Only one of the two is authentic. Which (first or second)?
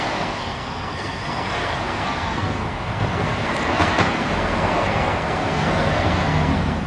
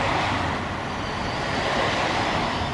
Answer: second